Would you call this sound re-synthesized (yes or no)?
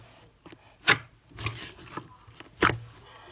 no